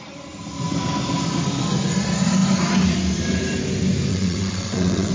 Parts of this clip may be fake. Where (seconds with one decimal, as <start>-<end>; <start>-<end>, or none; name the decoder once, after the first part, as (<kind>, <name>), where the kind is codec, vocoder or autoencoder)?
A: 4.1-5.1 (vocoder, WaveNeXt)